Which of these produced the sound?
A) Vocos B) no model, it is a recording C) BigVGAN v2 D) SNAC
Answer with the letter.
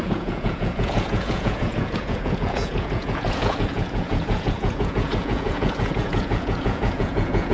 A